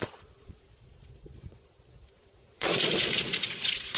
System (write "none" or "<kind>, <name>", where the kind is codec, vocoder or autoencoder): vocoder, Vocos